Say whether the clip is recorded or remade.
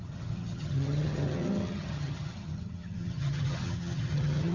remade